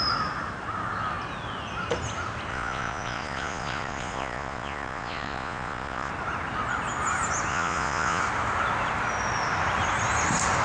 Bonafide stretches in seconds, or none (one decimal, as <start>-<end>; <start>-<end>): 0.0-2.5; 6.1-7.5; 8.2-10.6